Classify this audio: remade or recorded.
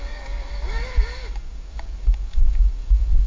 remade